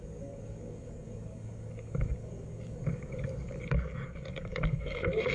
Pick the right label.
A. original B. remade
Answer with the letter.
B